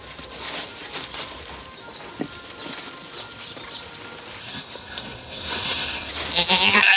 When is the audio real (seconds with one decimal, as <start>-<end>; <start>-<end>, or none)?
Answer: 0.0-4.4; 6.1-7.0